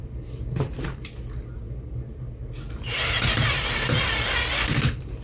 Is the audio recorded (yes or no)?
yes